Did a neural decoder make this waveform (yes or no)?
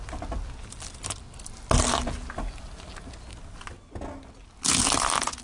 no